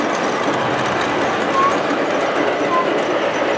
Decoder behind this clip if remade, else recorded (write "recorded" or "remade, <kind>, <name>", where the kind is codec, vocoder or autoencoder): recorded